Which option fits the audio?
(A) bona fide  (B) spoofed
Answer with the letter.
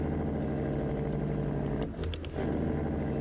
A